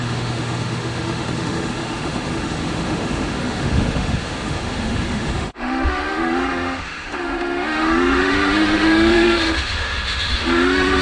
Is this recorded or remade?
remade